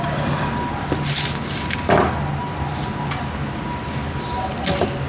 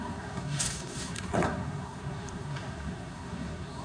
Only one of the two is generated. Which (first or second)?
second